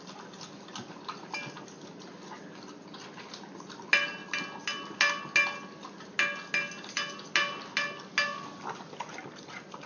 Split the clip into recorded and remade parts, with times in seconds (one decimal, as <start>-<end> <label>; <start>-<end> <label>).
0.0-9.9 recorded